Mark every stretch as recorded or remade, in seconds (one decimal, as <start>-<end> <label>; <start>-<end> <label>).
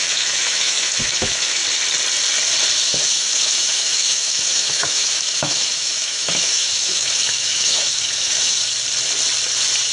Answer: 0.0-1.6 remade; 1.6-3.0 recorded; 3.0-8.6 remade; 8.6-9.9 recorded